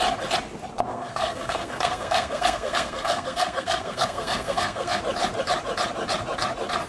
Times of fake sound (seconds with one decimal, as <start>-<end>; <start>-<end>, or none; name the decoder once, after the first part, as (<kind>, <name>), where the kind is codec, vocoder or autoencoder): 0.9-5.0 (codec, SNAC)